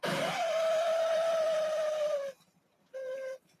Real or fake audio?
fake